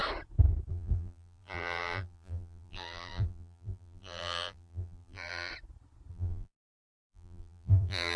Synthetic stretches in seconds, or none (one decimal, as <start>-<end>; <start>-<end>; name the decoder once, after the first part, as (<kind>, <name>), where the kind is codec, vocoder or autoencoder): 0.7-5.5 (vocoder, BigVGAN v2); 6.1-8.2